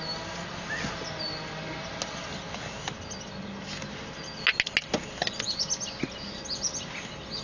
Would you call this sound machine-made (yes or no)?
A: no